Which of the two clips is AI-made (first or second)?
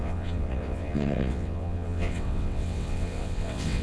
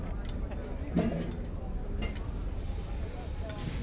first